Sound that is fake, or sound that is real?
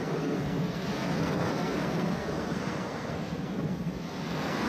fake